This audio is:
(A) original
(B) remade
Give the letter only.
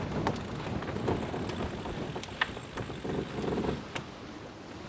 A